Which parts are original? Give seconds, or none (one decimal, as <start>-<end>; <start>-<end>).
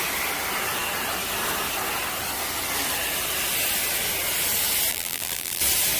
0.0-4.9; 5.6-6.0